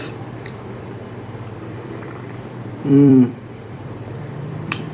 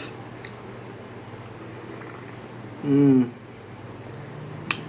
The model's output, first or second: first